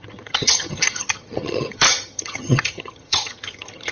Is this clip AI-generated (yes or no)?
yes